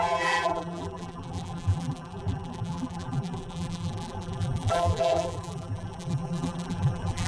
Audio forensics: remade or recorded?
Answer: remade